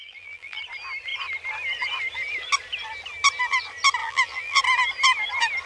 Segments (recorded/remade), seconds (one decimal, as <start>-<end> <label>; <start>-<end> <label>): 0.0-0.6 remade; 0.6-4.0 recorded; 4.0-4.6 remade; 4.6-5.7 recorded